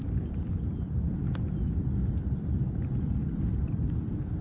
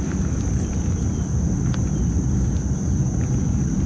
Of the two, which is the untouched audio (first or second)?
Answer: second